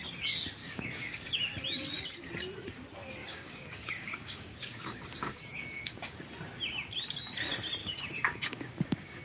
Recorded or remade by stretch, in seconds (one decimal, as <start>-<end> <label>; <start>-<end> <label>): 0.0-0.6 recorded; 0.6-1.4 remade; 1.4-3.2 recorded; 3.2-6.2 remade; 6.2-7.8 recorded; 7.8-9.2 remade